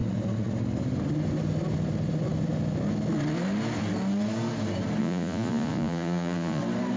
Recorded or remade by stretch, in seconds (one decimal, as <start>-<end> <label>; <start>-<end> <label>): 0.0-5.0 recorded; 5.0-6.6 remade; 6.6-7.0 recorded

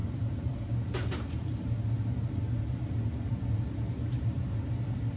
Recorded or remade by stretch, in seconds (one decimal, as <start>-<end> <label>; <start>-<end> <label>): 0.0-1.7 remade; 1.7-3.9 recorded; 3.9-4.4 remade; 4.4-5.2 recorded

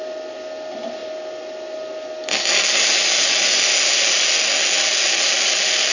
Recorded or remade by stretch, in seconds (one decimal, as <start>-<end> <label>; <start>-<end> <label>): 0.0-5.9 recorded

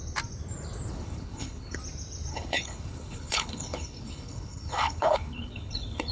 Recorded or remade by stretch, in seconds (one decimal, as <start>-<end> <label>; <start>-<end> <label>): 0.0-0.9 recorded; 0.9-1.8 remade; 1.8-2.3 recorded; 2.3-6.1 remade

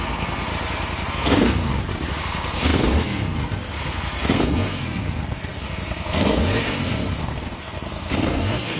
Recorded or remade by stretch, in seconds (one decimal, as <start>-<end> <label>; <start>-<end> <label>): 0.0-0.5 remade; 0.5-1.1 recorded; 1.1-1.7 remade; 1.7-2.2 recorded; 2.2-8.8 remade

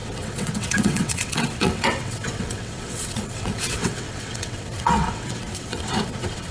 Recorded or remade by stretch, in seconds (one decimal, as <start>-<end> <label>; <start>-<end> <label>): 0.0-6.5 remade